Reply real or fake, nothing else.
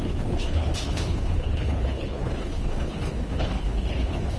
fake